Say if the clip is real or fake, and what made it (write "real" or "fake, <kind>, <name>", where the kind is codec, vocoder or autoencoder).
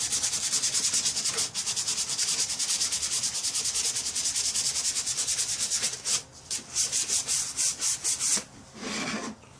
real